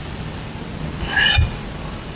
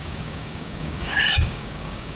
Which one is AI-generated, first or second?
second